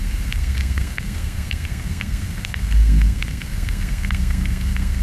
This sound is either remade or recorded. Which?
remade